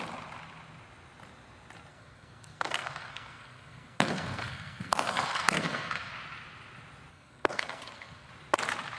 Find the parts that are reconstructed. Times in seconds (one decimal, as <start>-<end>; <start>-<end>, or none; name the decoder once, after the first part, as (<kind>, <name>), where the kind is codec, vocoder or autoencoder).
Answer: 1.9-6.1 (codec, SNAC); 7.1-8.3